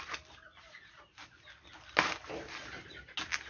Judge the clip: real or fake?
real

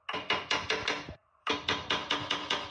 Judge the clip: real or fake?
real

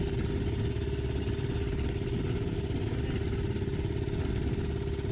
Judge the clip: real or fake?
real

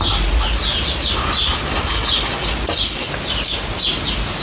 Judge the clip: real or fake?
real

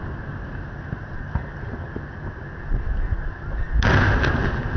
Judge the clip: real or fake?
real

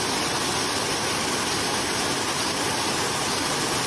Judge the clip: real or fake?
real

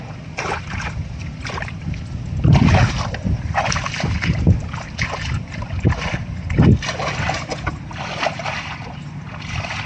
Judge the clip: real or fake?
real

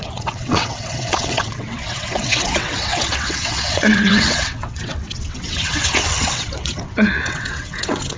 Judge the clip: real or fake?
fake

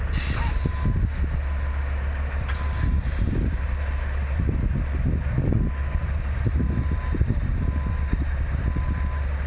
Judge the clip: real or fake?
real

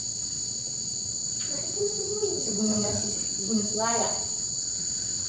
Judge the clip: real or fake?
fake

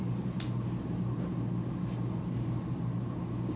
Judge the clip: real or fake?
real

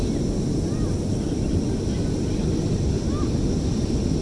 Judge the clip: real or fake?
real